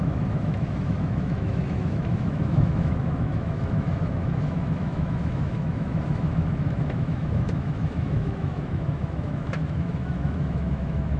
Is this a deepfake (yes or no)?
yes